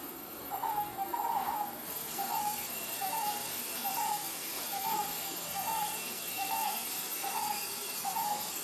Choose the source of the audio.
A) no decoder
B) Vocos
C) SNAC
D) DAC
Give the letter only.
C